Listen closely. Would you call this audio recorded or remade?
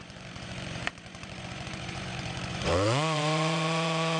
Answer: remade